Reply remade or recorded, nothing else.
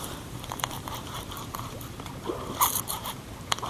remade